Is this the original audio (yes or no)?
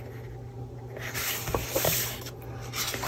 yes